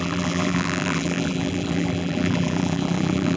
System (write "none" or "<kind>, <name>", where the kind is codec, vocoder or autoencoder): vocoder, BigVGAN v2